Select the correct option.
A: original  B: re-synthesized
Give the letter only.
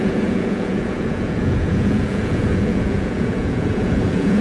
B